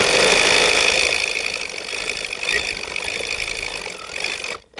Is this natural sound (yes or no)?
no